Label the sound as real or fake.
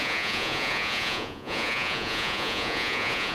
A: fake